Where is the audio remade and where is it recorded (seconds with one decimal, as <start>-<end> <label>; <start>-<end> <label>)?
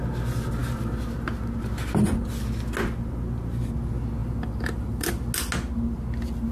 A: 0.0-4.2 recorded; 4.2-5.1 remade; 5.1-6.5 recorded